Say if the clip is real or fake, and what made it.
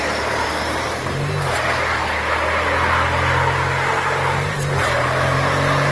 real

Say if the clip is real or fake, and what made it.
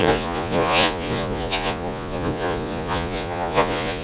fake, vocoder, Vocos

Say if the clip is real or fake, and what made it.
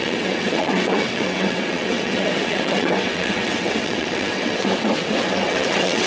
fake, vocoder, WaveNeXt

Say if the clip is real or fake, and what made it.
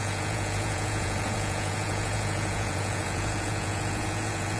fake, vocoder, Vocos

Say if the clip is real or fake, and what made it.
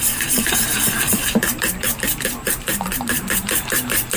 fake, vocoder, BigVGAN v2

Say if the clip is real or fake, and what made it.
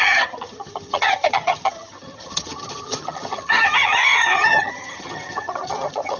fake, vocoder, HiFi-GAN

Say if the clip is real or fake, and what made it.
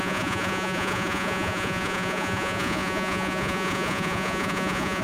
fake, vocoder, Vocos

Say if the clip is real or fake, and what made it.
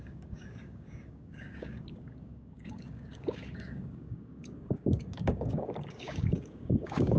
fake, codec, DAC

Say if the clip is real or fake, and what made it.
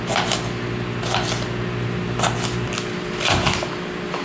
real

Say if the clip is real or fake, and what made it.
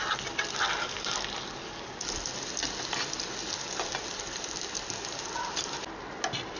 real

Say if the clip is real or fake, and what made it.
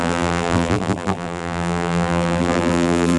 fake, vocoder, BigVGAN v2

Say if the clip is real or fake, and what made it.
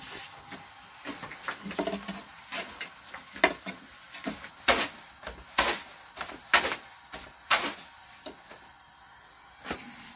real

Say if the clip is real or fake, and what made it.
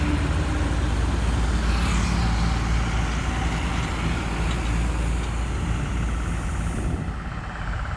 real